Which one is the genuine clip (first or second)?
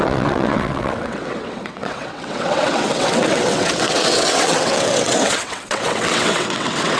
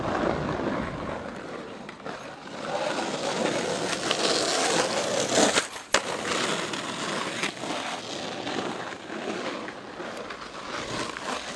second